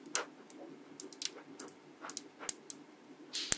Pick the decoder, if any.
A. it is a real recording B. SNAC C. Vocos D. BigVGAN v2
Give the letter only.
A